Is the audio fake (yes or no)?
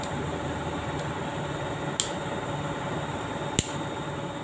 no